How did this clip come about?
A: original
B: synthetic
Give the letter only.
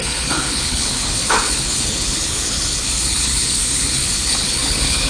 B